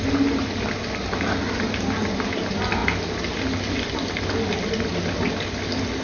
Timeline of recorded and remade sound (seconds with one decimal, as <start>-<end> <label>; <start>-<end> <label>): 0.0-6.0 recorded